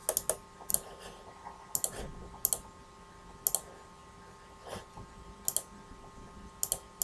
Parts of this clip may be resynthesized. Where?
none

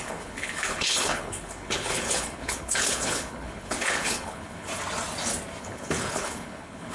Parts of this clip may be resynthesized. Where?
0.0-4.7 (codec, HILCodec); 5.6-6.9

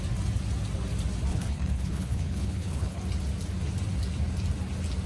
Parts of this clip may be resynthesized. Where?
1.3-3.0 (codec, HILCodec)

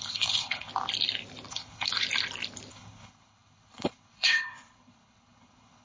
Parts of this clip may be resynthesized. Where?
0.0-0.7 (codec, HILCodec); 1.5-1.9; 2.7-5.8

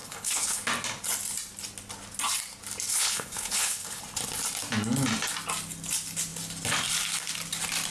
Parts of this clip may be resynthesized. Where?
0.0-0.6 (codec, HILCodec); 2.9-4.0

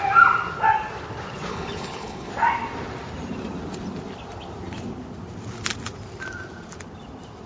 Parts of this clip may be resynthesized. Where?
1.5-2.3 (codec, HILCodec)

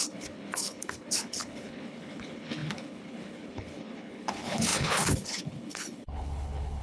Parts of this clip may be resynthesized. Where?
0.0-6.8 (codec, HILCodec)